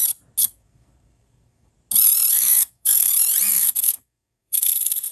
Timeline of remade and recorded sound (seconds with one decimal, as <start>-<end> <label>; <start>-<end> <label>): 0.0-0.4 recorded; 0.4-1.7 remade; 1.7-2.3 recorded; 2.3-3.1 remade; 3.1-3.5 recorded; 3.5-5.1 remade